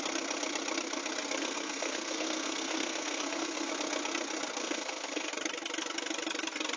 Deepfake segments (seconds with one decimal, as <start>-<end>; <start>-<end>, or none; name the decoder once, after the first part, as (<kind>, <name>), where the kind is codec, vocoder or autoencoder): 1.4-3.7 (codec, SNAC); 4.6-5.3